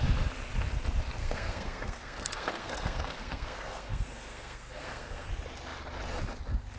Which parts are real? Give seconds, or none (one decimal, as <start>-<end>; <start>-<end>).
0.0-1.2; 5.3-6.8